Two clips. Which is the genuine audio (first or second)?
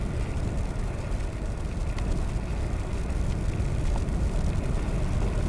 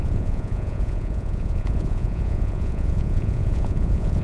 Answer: first